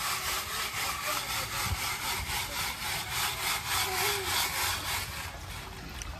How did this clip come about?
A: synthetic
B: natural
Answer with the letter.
B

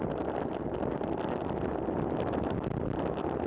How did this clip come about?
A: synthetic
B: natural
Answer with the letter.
B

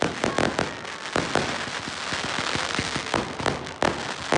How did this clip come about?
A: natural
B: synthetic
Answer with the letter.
A